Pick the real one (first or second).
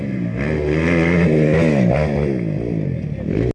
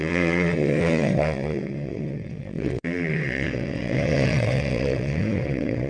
first